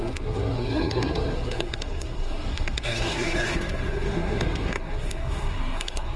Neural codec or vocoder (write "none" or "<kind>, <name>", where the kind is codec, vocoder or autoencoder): codec, SNAC